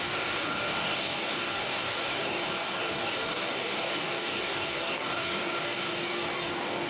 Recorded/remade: remade